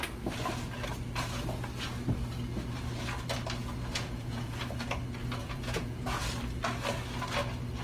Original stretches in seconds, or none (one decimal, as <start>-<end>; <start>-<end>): 0.0-3.6; 4.6-5.4; 6.2-7.8